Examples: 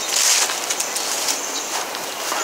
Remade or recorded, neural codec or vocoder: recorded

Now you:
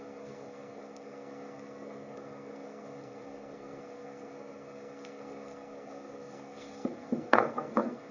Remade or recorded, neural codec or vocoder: remade, codec, SNAC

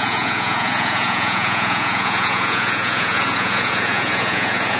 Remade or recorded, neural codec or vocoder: remade, vocoder, Vocos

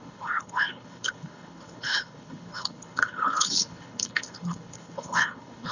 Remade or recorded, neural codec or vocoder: remade, codec, HILCodec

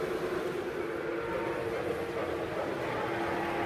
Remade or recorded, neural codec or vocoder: recorded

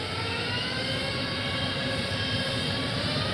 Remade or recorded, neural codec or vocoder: recorded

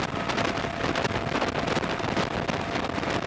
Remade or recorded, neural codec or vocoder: recorded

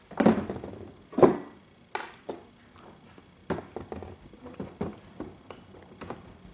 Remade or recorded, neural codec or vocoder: recorded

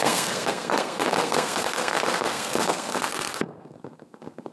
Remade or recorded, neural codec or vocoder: remade, codec, SNAC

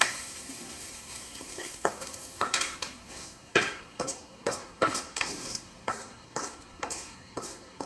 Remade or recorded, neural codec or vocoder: remade, codec, SNAC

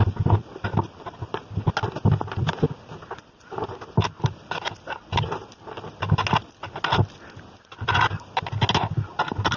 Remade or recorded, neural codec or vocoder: recorded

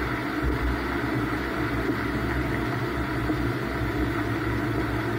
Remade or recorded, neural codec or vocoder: recorded